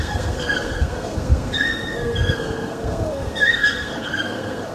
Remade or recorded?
remade